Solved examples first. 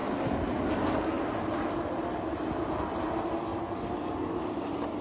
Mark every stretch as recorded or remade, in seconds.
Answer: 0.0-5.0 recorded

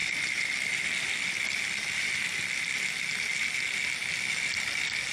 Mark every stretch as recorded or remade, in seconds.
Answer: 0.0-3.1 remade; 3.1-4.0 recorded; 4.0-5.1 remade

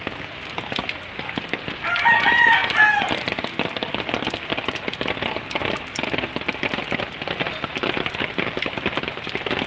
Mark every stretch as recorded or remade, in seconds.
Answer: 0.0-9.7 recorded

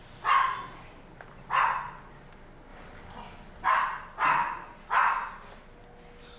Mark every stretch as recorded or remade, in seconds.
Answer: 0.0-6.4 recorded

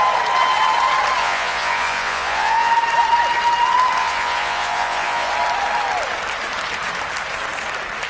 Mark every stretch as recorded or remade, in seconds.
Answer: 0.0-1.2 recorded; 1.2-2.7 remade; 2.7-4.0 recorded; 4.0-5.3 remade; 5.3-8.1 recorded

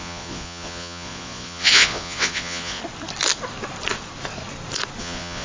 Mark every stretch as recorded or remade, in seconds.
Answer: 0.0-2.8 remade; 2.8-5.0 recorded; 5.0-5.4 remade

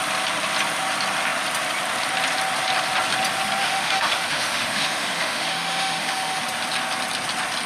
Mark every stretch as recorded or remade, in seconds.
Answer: 0.0-3.6 recorded; 3.6-6.4 remade; 6.4-7.7 recorded